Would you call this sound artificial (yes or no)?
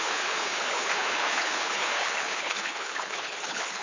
yes